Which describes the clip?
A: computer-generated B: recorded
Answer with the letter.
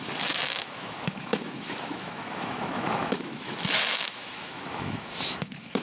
A